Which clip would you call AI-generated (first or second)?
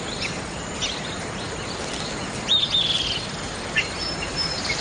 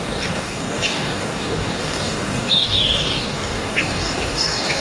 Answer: second